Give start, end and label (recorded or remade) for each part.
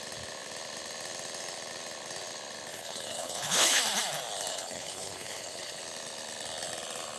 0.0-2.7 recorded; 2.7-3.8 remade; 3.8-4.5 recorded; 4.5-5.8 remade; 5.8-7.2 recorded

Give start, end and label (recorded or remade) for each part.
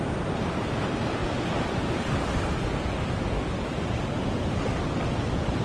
0.0-5.6 recorded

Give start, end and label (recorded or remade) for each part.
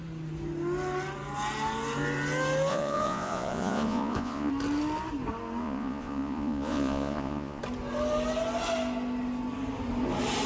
0.0-2.7 recorded; 2.7-4.5 remade; 4.5-5.6 recorded; 5.6-7.6 remade; 7.6-10.5 recorded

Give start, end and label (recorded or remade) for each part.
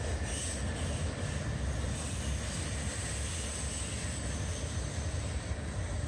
0.0-6.1 recorded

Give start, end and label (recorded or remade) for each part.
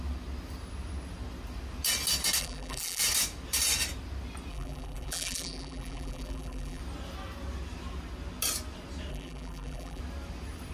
0.0-2.4 recorded; 2.4-3.0 remade; 3.0-4.5 recorded; 4.5-6.8 remade; 6.8-9.1 recorded; 9.1-10.0 remade; 10.0-10.7 recorded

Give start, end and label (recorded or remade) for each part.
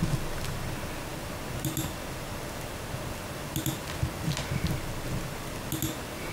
0.0-6.3 recorded